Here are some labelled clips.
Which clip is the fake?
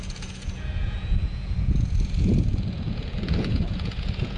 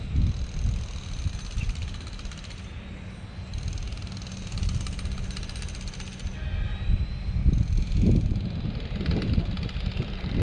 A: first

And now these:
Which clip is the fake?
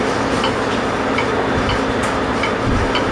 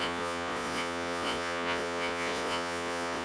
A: second